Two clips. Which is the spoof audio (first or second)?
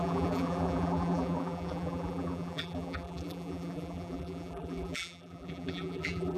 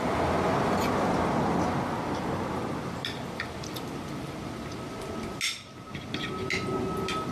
first